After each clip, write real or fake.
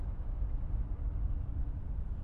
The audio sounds real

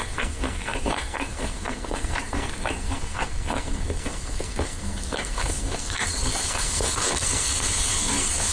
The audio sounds fake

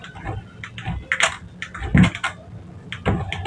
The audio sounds real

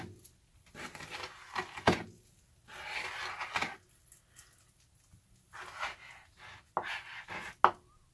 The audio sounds real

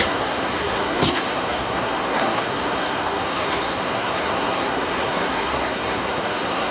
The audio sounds fake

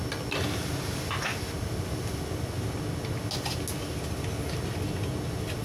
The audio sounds real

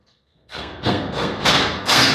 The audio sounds fake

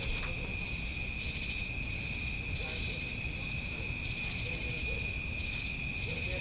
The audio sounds real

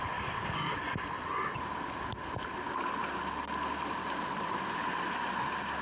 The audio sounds real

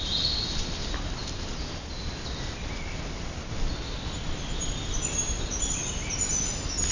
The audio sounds real